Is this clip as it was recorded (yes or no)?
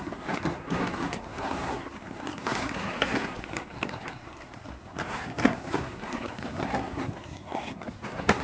no